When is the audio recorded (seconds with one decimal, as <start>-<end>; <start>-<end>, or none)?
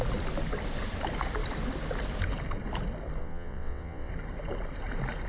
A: 0.0-3.2; 4.1-5.3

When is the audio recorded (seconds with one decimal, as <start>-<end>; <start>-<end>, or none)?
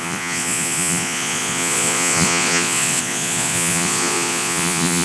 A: none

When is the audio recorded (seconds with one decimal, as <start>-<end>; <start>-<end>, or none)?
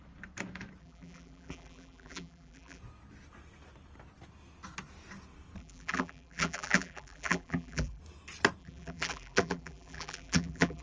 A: 0.0-0.8; 2.8-5.6; 8.0-8.6